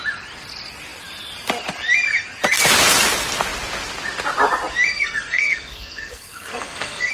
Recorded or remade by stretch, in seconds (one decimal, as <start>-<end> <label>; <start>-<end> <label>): 0.0-4.9 recorded; 4.9-7.1 remade